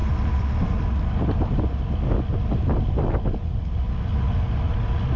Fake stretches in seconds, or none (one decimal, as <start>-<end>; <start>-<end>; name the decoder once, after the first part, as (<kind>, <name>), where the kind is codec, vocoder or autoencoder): none

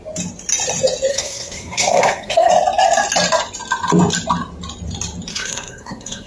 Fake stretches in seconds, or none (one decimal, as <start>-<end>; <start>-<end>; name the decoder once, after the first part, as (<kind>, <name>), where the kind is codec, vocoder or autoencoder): 1.1-2.5 (codec, SNAC); 5.3-6.3